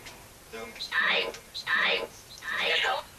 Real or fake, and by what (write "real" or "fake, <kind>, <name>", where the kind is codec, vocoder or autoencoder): real